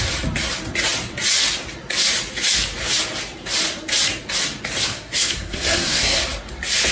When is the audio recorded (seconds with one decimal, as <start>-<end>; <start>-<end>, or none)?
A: 0.0-4.9; 6.2-6.9